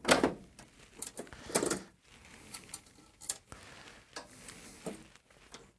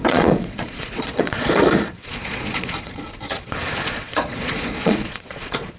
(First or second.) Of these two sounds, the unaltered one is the first